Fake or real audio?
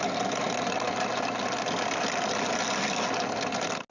real